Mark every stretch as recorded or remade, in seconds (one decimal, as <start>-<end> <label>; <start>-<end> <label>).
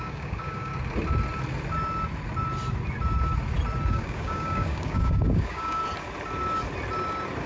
0.0-0.7 remade; 0.7-3.9 recorded; 3.9-5.8 remade; 5.8-7.5 recorded